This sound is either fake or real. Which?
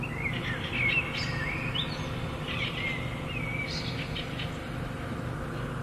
real